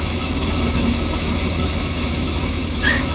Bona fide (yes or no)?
no